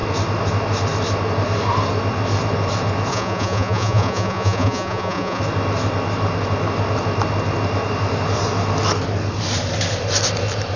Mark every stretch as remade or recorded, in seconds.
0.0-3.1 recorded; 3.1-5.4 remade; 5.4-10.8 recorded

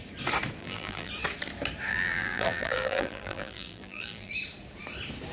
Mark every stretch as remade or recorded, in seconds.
0.0-0.6 recorded; 0.6-1.1 remade; 1.1-1.9 recorded; 1.9-4.3 remade; 4.3-5.3 recorded

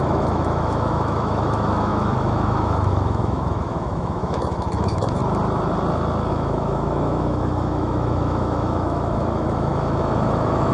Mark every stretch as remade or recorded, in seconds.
0.0-5.2 remade; 5.2-6.3 recorded; 6.3-10.7 remade

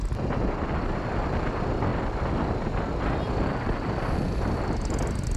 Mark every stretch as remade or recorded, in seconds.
0.0-5.4 recorded

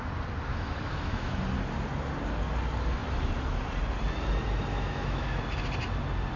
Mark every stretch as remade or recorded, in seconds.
0.0-0.5 recorded; 0.5-1.4 remade; 1.4-4.7 recorded; 4.7-5.4 remade; 5.4-6.4 recorded

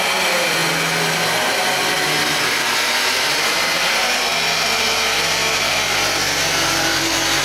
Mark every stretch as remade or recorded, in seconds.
0.0-7.4 recorded

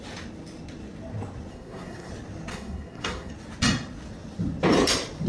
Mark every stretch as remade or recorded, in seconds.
0.0-1.5 recorded; 1.5-2.1 remade; 2.1-2.5 recorded; 2.5-3.3 remade; 3.3-5.3 recorded